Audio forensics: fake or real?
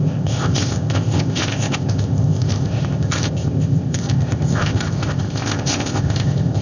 fake